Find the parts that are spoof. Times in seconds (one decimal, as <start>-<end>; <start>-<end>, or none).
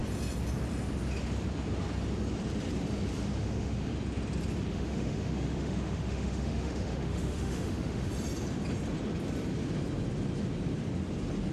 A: 3.4-3.9; 4.7-8.1